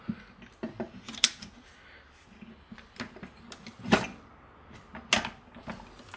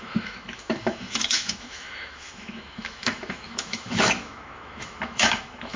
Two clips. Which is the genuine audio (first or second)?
first